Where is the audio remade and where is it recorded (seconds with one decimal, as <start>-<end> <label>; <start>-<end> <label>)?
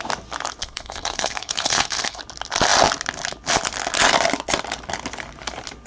0.0-0.6 recorded; 0.6-2.2 remade; 2.2-5.9 recorded